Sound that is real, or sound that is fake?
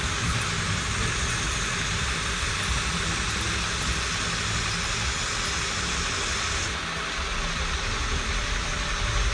real